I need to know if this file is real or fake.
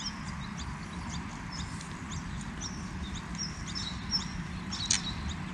real